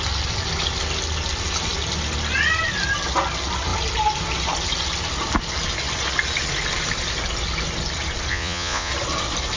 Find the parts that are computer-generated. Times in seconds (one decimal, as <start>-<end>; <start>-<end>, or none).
8.3-8.9